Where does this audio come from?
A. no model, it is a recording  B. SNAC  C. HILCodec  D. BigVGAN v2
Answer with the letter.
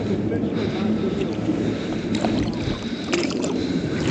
D